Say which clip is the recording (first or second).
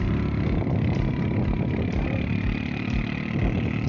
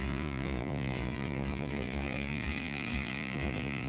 first